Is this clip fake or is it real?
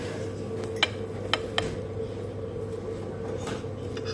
real